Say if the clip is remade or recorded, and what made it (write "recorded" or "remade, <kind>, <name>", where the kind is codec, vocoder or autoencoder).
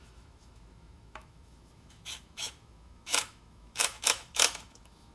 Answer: remade, autoencoder, DAC-VAE